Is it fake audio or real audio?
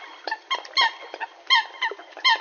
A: real